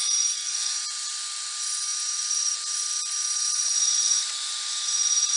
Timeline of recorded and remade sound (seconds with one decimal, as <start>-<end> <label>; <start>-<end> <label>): 0.0-0.5 recorded; 0.5-1.1 remade; 1.1-1.9 recorded; 1.9-2.4 remade; 2.4-3.6 recorded; 3.6-4.3 remade; 4.3-5.4 recorded